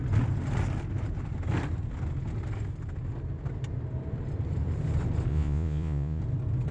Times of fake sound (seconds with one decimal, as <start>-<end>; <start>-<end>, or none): 5.3-6.2